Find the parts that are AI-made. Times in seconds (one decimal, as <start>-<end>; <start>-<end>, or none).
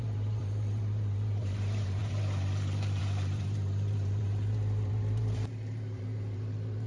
0.0-6.9